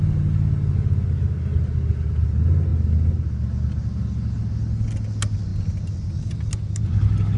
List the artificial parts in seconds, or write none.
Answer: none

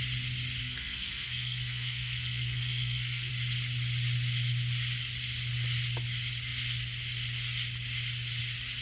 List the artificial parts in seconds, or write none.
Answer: 0.6-3.3 (codec, SNAC)

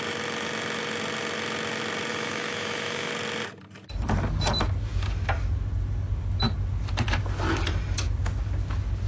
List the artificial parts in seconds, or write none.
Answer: 2.1-3.1 (autoencoder, DAC-VAE)

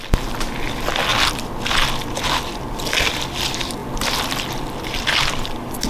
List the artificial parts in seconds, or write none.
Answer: 3.8-5.2 (vocoder, BigVGAN v2)

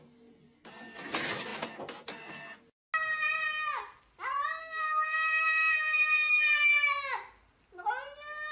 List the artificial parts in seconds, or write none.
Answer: 4.6-6.7 (codec, SNAC)

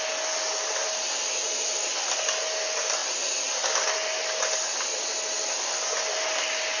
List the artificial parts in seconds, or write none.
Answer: none